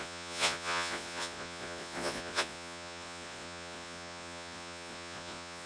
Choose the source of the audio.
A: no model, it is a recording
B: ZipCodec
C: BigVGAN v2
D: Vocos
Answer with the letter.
D